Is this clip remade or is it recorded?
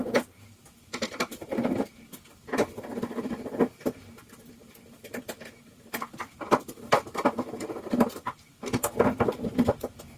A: recorded